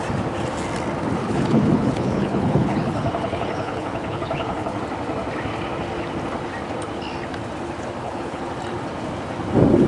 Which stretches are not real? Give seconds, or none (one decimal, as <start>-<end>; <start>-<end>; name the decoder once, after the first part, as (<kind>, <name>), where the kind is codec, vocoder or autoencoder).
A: 1.2-4.8 (codec, HILCodec); 8.0-8.5

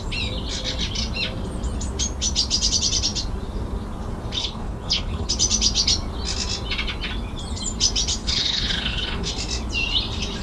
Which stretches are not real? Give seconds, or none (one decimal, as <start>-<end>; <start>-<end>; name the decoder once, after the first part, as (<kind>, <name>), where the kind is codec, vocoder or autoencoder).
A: 4.4-5.3 (codec, HILCodec); 8.2-9.3

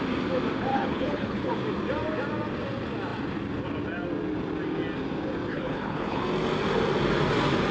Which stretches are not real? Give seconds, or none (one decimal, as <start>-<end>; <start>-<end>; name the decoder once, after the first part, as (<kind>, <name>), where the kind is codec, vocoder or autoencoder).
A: 0.7-1.5 (codec, HILCodec); 5.5-6.2